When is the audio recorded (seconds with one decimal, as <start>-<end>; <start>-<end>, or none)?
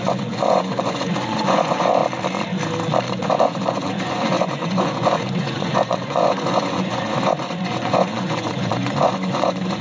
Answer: 2.0-3.2